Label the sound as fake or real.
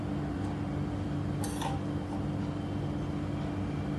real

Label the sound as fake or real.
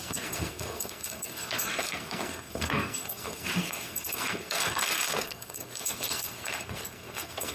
fake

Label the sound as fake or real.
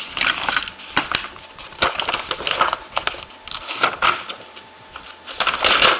real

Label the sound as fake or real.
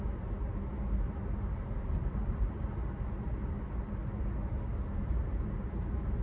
real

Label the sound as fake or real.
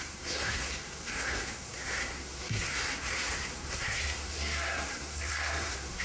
fake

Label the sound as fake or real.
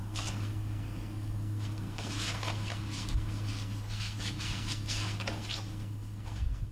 fake